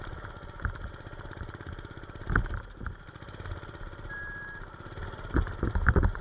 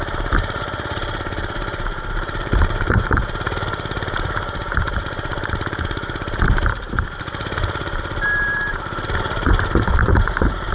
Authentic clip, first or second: first